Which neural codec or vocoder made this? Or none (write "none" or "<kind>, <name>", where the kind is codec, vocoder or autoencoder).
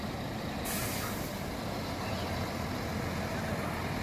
none